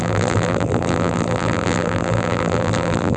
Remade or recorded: remade